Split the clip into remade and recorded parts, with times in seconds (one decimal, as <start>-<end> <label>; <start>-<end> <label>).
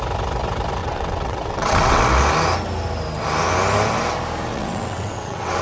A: 0.0-0.8 recorded; 0.8-2.0 remade; 2.0-4.5 recorded; 4.5-5.6 remade